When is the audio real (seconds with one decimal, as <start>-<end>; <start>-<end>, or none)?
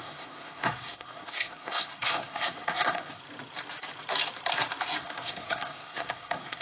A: 3.2-5.0